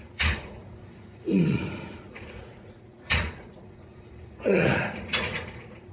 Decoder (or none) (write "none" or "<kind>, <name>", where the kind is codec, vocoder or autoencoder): vocoder, Vocos